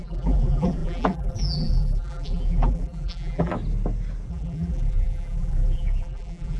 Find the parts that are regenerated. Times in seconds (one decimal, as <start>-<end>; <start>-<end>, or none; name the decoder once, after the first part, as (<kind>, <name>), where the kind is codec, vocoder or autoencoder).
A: 0.0-3.5 (vocoder, BigVGAN v2); 4.3-6.6